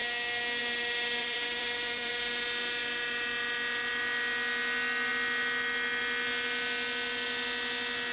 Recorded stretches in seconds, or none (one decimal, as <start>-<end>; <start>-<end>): 0.0-1.2; 2.1-8.1